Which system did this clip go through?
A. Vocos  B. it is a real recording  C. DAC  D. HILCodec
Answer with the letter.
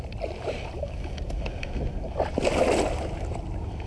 B